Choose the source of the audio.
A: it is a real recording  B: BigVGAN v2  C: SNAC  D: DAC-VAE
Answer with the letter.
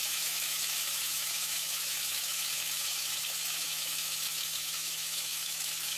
D